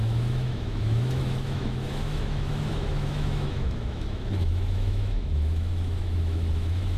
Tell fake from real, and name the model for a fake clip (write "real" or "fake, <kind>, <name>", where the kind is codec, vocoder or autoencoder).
fake, autoencoder, DAC-VAE